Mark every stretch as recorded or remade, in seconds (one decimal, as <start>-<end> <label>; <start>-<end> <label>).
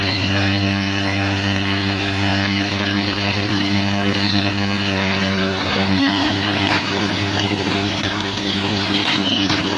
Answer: 0.0-9.8 remade